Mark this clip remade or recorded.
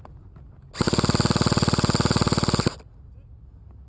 recorded